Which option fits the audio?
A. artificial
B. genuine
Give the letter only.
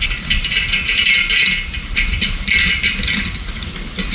B